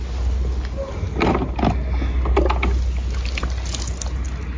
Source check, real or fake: real